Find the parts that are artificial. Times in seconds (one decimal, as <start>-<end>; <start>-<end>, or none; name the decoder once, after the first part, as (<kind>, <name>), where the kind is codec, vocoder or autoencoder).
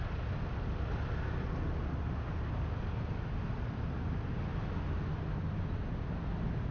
none